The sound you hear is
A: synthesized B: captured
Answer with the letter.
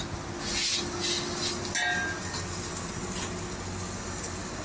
B